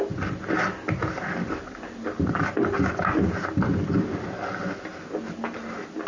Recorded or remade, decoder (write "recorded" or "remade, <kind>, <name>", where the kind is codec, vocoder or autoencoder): recorded